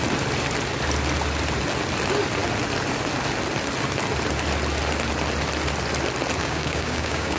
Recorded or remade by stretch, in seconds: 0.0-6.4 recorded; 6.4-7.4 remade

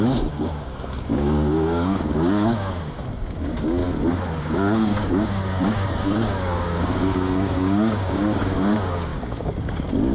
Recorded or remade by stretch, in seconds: 0.0-3.8 remade; 3.8-4.4 recorded; 4.4-10.1 remade

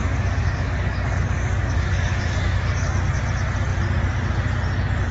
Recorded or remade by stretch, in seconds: 0.0-3.1 remade; 3.1-5.1 recorded

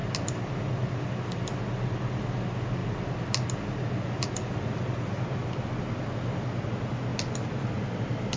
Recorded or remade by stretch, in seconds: 0.0-8.4 recorded

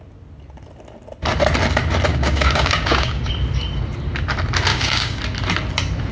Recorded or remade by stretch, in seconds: 0.0-2.1 recorded; 2.1-3.3 remade; 3.3-4.7 recorded; 4.7-5.2 remade; 5.2-6.1 recorded

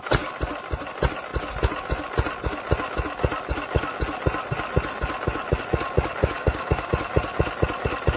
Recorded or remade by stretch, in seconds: 0.0-6.2 recorded; 6.2-6.9 remade; 6.9-8.2 recorded

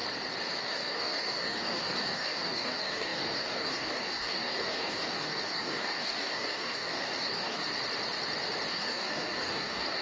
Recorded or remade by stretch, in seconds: 0.0-0.6 recorded; 0.6-7.6 remade; 7.6-8.7 recorded; 8.7-10.0 remade

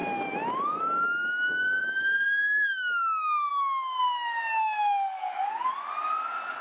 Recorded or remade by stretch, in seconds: 0.0-0.8 recorded; 0.8-5.7 remade; 5.7-6.6 recorded